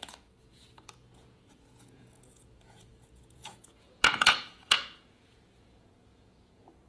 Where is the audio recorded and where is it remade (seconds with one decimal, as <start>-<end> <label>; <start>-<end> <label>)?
0.0-6.9 remade